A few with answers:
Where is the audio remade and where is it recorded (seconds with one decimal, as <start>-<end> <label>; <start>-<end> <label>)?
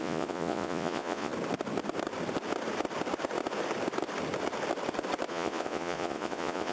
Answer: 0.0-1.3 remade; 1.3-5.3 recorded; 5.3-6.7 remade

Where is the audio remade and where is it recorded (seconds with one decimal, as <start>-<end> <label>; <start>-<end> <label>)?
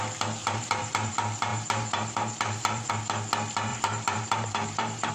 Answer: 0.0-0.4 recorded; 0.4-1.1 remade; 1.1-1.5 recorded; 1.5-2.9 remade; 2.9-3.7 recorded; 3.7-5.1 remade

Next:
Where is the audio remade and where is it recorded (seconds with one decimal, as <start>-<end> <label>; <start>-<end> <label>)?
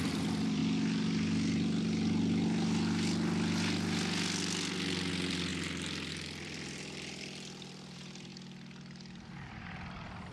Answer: 0.0-0.6 remade; 0.6-5.1 recorded; 5.1-5.5 remade; 5.5-6.1 recorded; 6.1-8.3 remade; 8.3-9.3 recorded; 9.3-10.3 remade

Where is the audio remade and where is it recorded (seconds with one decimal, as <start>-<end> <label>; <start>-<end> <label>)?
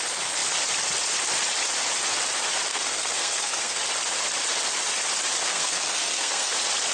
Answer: 0.0-2.7 recorded; 2.7-3.8 remade; 3.8-5.5 recorded; 5.5-6.5 remade; 6.5-6.9 recorded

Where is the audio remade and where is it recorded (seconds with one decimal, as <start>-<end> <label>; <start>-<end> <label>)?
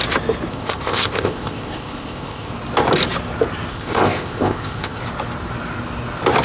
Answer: 0.0-0.5 recorded; 0.5-2.5 remade; 2.5-3.7 recorded; 3.7-5.0 remade; 5.0-6.4 recorded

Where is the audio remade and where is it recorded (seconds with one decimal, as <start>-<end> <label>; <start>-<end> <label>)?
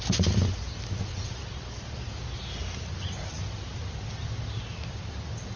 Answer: 0.0-5.6 recorded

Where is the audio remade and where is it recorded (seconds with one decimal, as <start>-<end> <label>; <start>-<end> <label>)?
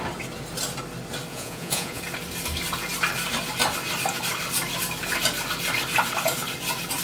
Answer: 0.0-1.3 recorded; 1.3-2.0 remade; 2.0-7.0 recorded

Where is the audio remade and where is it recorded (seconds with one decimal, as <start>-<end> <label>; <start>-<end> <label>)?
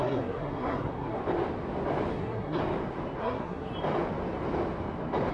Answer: 0.0-1.2 remade; 1.2-2.1 recorded; 2.1-2.6 remade; 2.6-3.2 recorded; 3.2-3.7 remade; 3.7-5.3 recorded